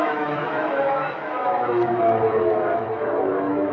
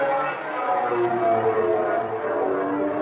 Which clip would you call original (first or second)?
second